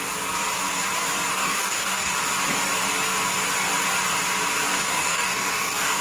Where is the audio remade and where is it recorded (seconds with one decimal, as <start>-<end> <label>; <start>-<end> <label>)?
0.0-1.3 recorded; 1.3-2.1 remade; 2.1-4.7 recorded; 4.7-6.0 remade